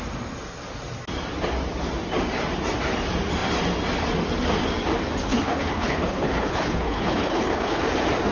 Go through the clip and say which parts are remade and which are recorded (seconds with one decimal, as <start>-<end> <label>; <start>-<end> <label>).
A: 0.0-5.3 recorded; 5.3-7.8 remade; 7.8-8.3 recorded